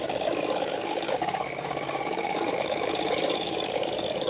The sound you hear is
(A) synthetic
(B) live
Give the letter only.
A